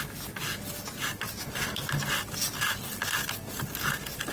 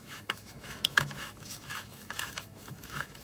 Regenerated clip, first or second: second